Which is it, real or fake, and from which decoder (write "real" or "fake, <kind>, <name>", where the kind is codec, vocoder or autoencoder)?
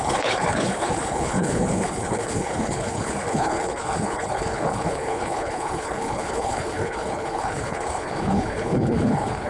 fake, codec, HILCodec